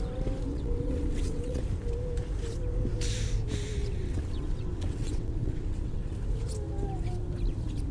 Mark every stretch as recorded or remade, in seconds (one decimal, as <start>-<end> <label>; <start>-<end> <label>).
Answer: 0.0-0.5 recorded; 0.5-1.6 remade; 1.6-3.8 recorded; 3.8-6.0 remade; 6.0-7.9 recorded